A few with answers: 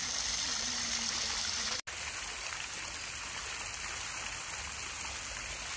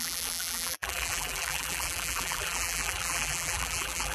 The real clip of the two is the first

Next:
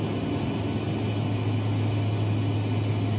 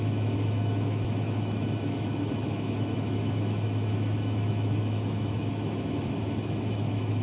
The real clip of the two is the first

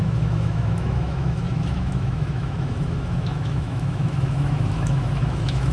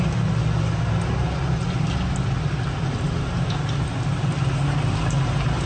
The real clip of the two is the second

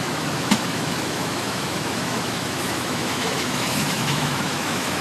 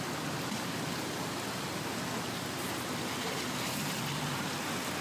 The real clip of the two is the second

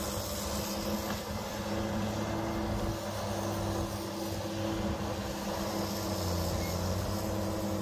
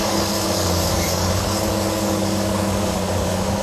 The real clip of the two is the first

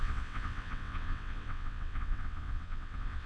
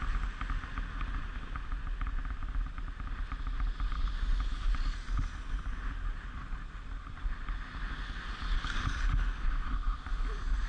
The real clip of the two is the second